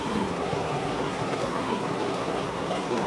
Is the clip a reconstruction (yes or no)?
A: yes